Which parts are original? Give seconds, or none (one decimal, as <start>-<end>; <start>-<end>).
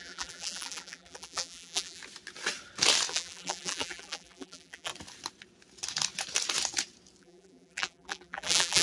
2.0-3.1; 4.9-7.2